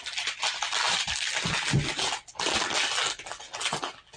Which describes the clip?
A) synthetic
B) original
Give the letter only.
B